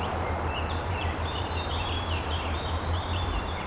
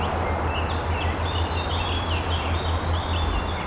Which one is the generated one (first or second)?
first